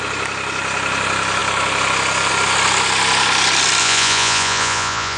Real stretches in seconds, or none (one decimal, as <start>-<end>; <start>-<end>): 0.0-3.8